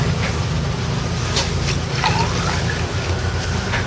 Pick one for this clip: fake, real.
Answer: real